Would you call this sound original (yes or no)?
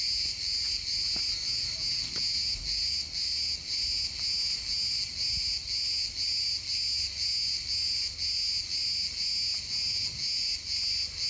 yes